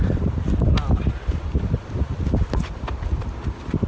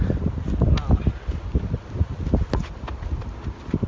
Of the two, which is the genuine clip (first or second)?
second